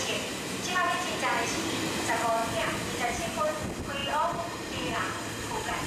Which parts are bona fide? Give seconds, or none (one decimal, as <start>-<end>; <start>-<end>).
0.0-5.9